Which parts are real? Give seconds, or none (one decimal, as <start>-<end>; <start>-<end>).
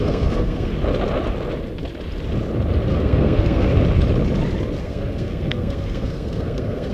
0.7-2.9; 3.7-4.8